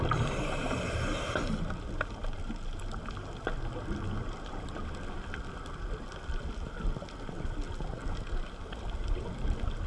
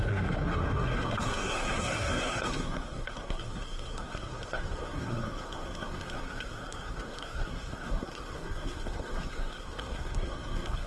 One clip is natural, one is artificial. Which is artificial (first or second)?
second